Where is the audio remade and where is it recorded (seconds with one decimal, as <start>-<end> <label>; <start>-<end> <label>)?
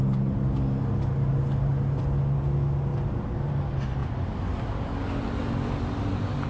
0.0-2.9 recorded; 2.9-3.5 remade; 3.5-6.5 recorded